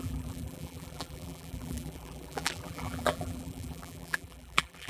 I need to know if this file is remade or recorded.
remade